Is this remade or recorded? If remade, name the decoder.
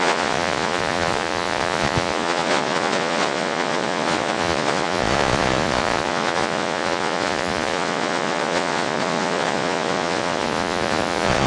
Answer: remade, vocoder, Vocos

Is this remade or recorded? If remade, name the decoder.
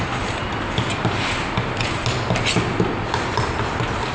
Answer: recorded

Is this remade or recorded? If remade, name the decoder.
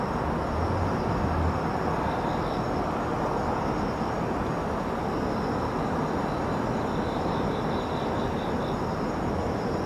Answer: recorded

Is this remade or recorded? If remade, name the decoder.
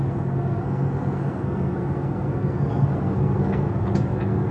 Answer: remade, codec, SNAC